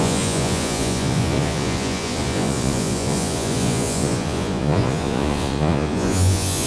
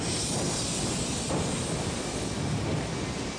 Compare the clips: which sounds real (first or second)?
second